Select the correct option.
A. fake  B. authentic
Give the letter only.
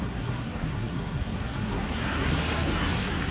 A